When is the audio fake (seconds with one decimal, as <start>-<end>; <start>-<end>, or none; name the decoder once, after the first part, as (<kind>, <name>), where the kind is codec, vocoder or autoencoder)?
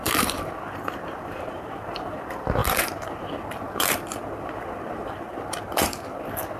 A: 0.0-6.6 (vocoder, BigVGAN v2)